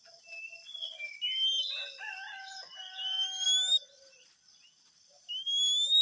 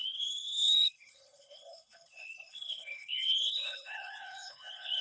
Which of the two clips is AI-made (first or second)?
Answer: second